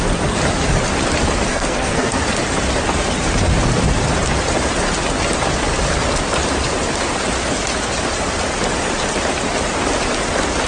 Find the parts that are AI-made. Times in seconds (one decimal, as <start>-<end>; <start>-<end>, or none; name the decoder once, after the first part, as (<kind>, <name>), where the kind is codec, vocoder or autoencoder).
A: 1.5-2.2 (codec, SNAC)